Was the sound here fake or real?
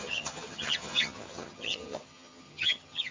fake